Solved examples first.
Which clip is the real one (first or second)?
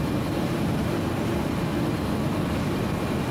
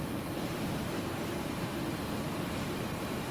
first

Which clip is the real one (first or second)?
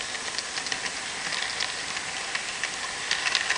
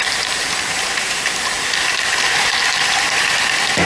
first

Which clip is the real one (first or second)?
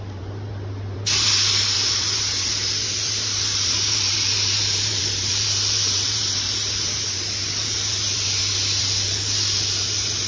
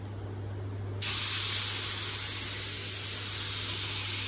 second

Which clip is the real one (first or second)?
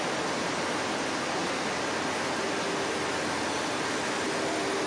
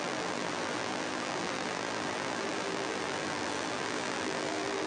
first